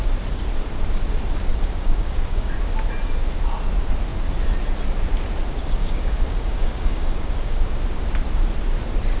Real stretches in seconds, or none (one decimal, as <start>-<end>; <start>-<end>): 0.0-1.5; 2.5-5.8; 7.7-9.2